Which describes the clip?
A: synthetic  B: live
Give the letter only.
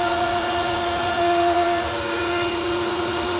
A